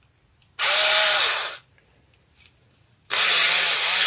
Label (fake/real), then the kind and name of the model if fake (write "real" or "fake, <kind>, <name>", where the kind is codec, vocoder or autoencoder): real